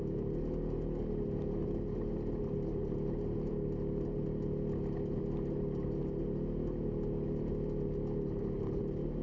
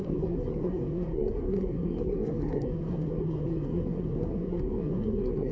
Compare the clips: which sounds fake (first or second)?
second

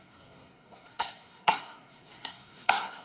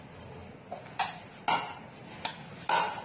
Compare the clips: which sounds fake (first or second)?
first